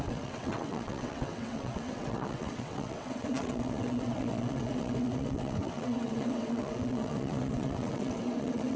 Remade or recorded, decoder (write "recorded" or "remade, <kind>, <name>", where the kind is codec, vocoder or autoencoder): remade, vocoder, WaveNeXt